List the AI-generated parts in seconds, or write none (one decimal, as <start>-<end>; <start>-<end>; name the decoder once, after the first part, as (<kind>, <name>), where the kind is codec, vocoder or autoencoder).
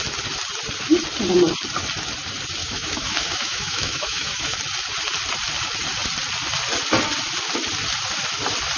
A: 2.6-4.6 (autoencoder, DAC-VAE)